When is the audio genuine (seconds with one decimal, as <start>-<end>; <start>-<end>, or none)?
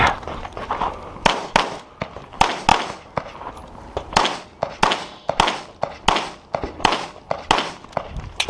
0.0-8.5